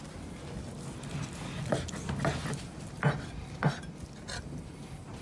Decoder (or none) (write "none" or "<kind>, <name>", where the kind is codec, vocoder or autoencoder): none